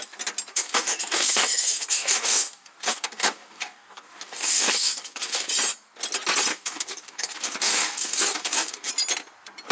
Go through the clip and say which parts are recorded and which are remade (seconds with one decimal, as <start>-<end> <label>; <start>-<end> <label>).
0.0-0.5 recorded; 0.5-5.5 remade; 5.5-6.5 recorded; 6.5-8.9 remade; 8.9-9.7 recorded